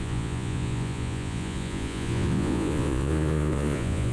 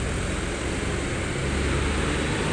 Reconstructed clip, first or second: first